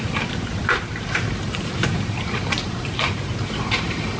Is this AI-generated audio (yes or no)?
yes